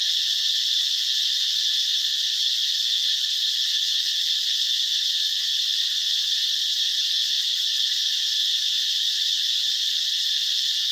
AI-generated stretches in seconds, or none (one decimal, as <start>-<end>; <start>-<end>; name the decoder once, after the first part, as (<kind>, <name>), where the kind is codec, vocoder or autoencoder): 0.0-4.1 (vocoder, BigVGAN v2); 4.8-5.3; 9.6-10.9